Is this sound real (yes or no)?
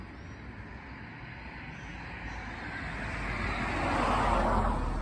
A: yes